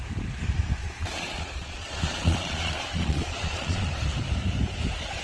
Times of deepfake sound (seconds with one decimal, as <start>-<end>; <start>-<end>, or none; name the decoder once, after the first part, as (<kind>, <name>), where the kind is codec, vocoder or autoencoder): 0.8-3.9 (vocoder, Vocos)